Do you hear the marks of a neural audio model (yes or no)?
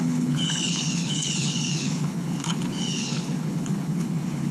yes